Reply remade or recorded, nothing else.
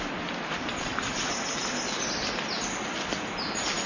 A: recorded